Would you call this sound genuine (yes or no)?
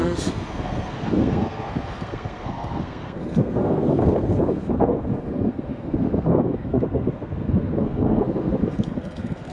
no